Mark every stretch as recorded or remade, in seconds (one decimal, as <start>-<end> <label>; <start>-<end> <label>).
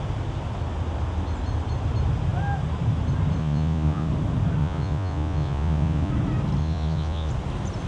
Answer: 0.0-3.4 recorded; 3.4-4.1 remade; 4.1-4.6 recorded; 4.6-6.1 remade; 6.1-6.6 recorded; 6.6-7.3 remade; 7.3-7.9 recorded